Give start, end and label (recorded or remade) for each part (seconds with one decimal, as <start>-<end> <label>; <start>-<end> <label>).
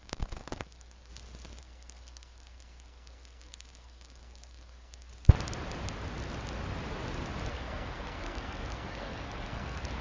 0.0-1.1 remade; 1.1-1.6 recorded; 1.6-5.1 remade; 5.1-7.5 recorded; 7.5-10.0 remade